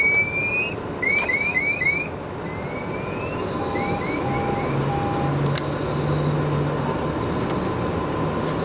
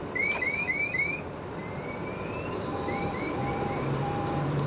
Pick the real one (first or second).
first